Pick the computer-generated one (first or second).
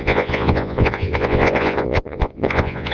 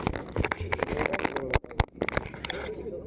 first